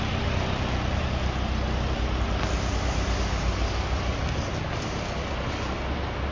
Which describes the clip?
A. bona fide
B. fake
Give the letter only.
A